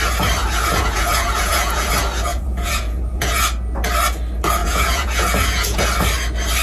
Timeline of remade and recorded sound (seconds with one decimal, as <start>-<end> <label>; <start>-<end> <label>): 0.0-0.4 recorded; 0.4-1.9 remade; 1.9-2.3 recorded; 2.3-3.4 remade; 3.4-4.6 recorded; 4.6-5.8 remade; 5.8-6.6 recorded